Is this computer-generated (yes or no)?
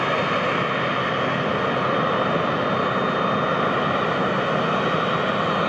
no